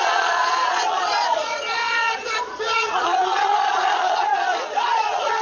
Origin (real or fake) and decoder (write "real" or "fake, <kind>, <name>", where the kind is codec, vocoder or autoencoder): fake, vocoder, Vocos